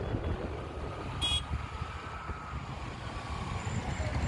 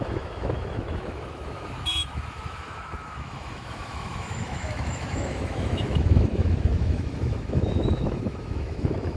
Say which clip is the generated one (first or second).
second